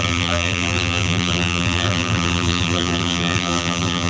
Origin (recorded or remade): remade